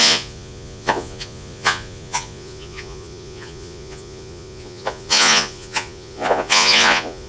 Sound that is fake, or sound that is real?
fake